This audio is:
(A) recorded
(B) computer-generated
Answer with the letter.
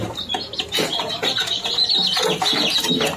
A